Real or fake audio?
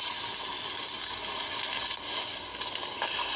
real